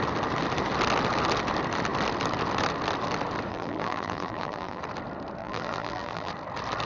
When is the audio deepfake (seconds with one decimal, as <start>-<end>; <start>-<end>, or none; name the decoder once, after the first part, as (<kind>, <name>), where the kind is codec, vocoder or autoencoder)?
3.5-4.8 (vocoder, BigVGAN v2); 5.4-6.3